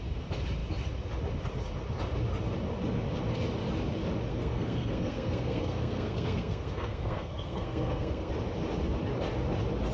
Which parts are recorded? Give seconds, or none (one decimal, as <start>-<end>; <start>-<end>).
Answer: 0.0-4.3; 8.3-9.9